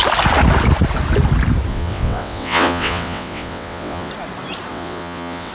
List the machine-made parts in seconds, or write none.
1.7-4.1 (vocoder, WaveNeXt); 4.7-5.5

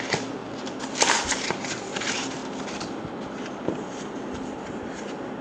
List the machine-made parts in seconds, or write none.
none

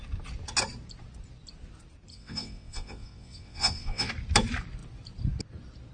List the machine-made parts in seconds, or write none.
2.1-4.1 (vocoder, WaveNeXt)

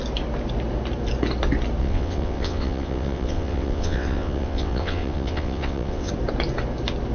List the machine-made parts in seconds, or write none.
1.8-6.1 (vocoder, WaveNeXt)